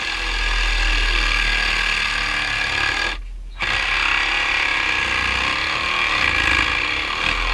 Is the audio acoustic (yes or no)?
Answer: yes